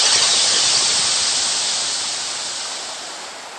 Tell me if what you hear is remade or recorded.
recorded